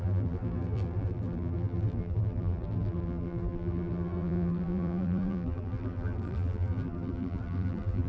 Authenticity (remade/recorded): remade